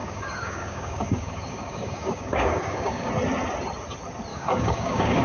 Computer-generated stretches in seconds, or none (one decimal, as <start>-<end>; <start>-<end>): 0.0-3.1; 4.3-5.2